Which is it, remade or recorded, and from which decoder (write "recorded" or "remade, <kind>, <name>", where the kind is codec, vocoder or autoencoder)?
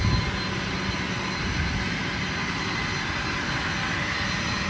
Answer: recorded